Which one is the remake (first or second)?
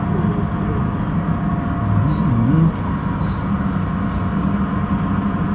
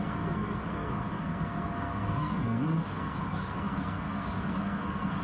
second